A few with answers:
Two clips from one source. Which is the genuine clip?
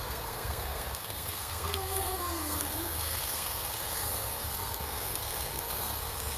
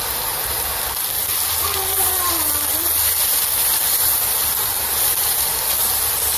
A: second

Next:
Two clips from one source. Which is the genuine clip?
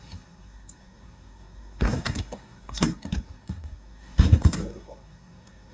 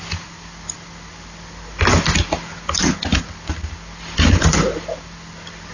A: second